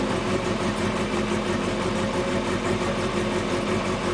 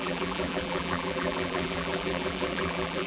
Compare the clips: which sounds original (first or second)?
first